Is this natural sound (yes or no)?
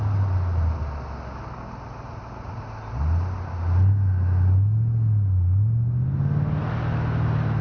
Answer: yes